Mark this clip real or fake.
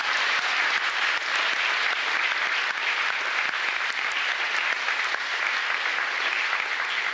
real